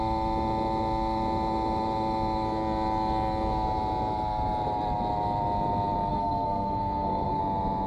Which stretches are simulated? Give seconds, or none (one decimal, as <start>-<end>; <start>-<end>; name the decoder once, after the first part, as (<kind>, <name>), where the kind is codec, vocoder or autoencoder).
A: 6.1-7.4 (codec, SNAC)